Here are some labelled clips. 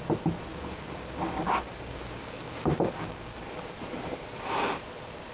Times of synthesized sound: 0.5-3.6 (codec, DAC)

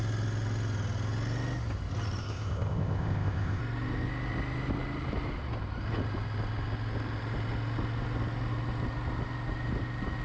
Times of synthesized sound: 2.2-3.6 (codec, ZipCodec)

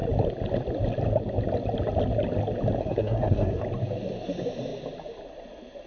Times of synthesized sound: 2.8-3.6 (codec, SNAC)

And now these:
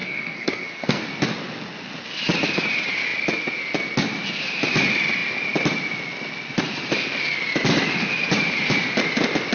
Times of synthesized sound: 0.0-1.0 (codec, SNAC)